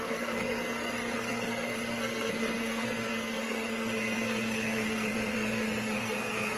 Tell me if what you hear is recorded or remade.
remade